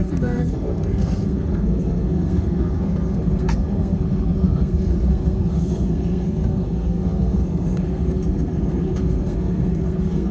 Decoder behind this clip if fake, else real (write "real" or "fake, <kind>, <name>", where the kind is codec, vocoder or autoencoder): fake, codec, SNAC